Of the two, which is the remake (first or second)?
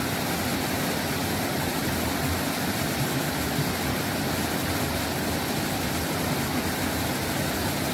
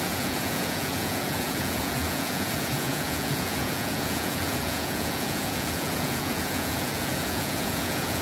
second